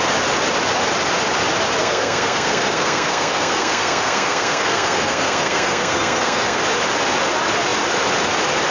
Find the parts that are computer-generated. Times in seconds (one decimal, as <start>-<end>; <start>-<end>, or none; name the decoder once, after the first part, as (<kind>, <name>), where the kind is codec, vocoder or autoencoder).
1.8-6.6 (codec, SNAC)